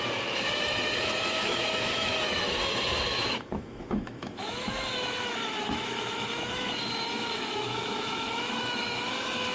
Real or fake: fake